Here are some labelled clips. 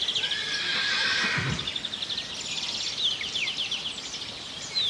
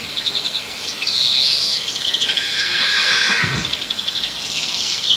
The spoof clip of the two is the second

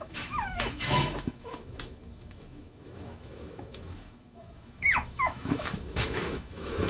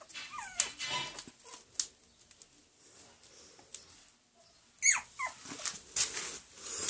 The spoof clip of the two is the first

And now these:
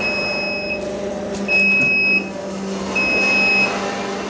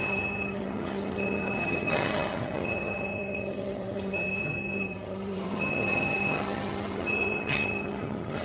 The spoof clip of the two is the second